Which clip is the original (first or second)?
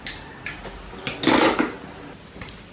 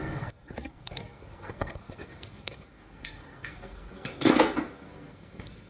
first